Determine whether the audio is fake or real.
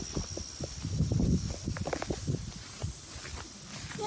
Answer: real